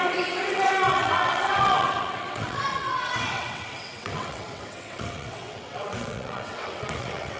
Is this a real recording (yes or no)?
no